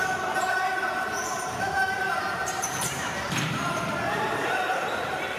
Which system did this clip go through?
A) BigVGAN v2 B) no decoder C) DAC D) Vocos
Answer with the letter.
A